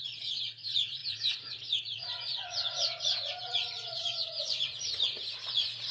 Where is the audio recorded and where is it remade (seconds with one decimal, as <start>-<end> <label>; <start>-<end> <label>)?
0.0-5.9 remade

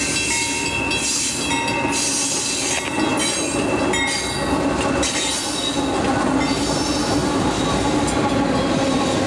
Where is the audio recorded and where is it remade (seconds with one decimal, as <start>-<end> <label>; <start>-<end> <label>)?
0.0-9.3 recorded

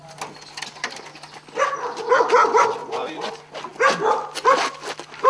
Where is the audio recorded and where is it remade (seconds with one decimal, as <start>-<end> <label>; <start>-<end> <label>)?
0.0-2.8 recorded; 2.8-3.3 remade; 3.3-5.3 recorded